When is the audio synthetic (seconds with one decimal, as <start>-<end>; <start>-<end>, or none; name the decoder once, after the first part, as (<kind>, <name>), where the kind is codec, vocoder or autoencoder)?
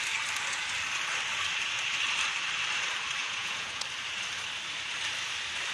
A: 3.2-3.8 (vocoder, Vocos)